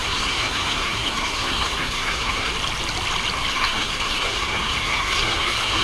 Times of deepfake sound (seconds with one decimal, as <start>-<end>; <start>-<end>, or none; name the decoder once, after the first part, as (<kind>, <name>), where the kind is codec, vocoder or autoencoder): 0.0-2.5 (codec, SNAC); 3.5-5.8